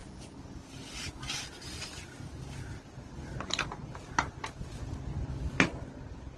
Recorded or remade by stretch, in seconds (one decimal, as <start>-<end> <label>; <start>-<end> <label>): 0.0-6.4 recorded